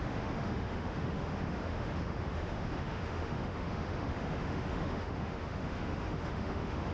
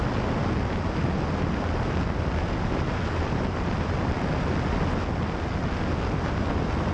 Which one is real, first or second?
second